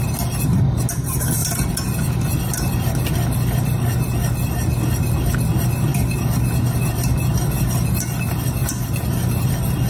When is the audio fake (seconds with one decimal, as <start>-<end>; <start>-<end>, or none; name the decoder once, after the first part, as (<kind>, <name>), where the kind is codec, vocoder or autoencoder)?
none